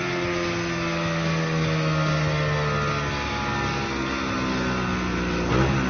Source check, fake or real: real